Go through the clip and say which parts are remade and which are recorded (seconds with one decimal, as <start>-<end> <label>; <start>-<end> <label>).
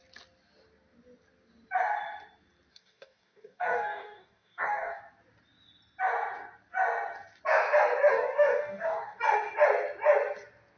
0.0-2.7 recorded; 2.7-5.0 remade; 5.0-8.1 recorded; 8.1-9.2 remade; 9.2-10.8 recorded